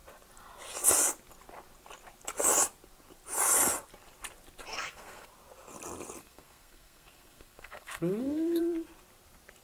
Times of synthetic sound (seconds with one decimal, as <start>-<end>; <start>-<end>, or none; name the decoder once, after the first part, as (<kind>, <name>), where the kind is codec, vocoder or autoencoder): 4.7-5.3 (codec, SNAC); 6.2-8.6